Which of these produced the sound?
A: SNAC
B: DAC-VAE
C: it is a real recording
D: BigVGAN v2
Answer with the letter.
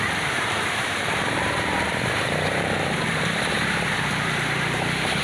D